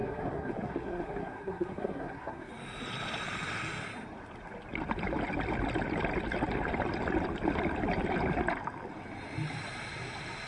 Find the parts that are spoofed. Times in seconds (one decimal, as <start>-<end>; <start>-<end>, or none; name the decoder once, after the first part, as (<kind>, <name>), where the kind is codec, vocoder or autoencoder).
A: 0.0-2.5 (codec, SNAC)